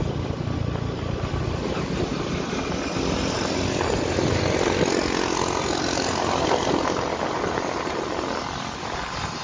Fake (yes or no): no